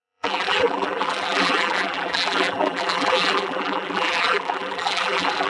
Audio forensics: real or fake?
fake